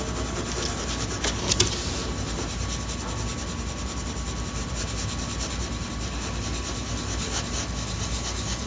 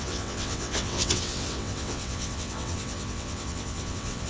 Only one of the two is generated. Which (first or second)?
second